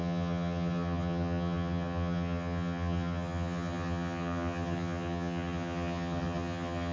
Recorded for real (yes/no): no